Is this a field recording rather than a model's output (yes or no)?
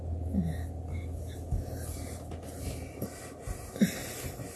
yes